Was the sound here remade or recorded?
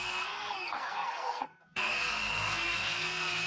remade